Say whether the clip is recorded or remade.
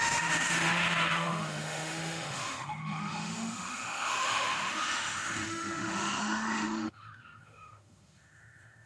remade